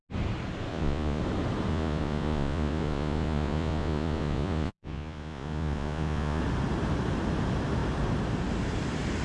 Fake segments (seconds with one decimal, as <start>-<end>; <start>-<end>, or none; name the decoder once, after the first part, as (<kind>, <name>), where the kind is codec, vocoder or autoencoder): 0.7-1.2 (vocoder, Vocos); 1.7-6.4